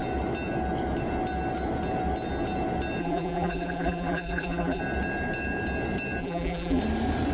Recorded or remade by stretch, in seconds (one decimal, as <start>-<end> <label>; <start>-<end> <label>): 0.0-3.0 recorded; 3.0-4.8 remade; 4.8-6.2 recorded; 6.2-6.8 remade; 6.8-7.3 recorded